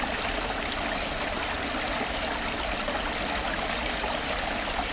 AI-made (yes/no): no